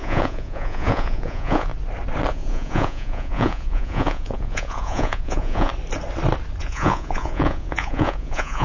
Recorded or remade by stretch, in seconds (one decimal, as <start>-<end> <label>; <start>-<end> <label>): 0.0-1.7 remade; 1.7-2.3 recorded; 2.3-5.7 remade; 5.7-6.6 recorded; 6.6-8.6 remade